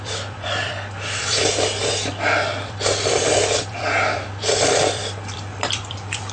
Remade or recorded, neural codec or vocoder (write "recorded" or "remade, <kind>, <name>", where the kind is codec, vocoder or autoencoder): remade, vocoder, BigVGAN v2